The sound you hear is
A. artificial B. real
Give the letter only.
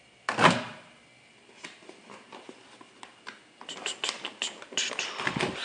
B